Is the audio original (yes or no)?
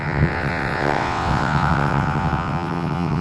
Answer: no